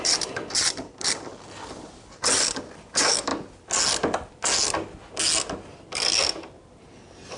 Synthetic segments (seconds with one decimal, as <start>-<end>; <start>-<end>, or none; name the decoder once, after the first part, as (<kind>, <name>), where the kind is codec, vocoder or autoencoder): 0.0-3.3 (vocoder, BigVGAN v2); 6.6-7.4